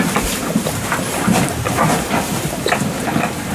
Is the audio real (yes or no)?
no